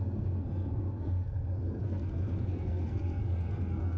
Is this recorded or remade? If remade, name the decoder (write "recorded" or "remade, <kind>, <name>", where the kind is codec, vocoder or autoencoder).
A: remade, codec, SNAC